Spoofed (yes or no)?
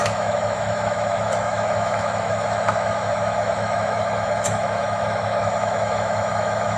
yes